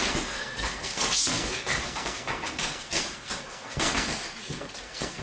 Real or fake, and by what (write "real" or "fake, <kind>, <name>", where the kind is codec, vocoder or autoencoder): fake, codec, SNAC